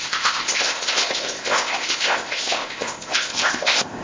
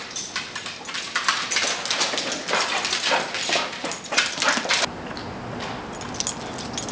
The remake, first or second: first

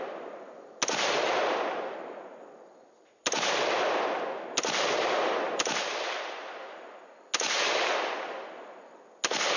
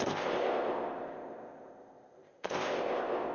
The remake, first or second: second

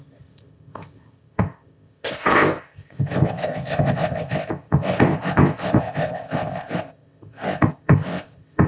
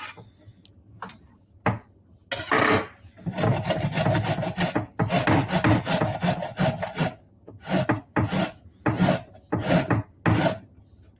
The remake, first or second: first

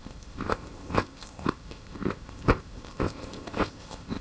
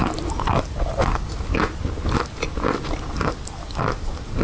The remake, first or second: first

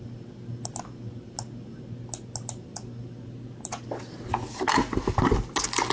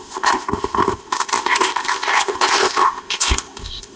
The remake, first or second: second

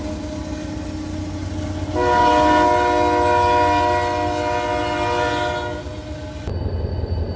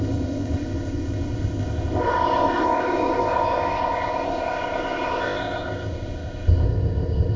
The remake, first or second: second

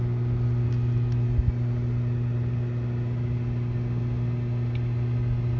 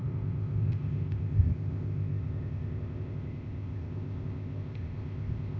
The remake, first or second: second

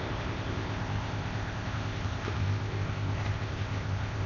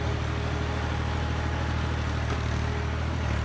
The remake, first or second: first